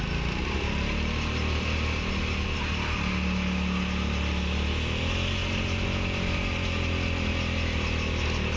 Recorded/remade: recorded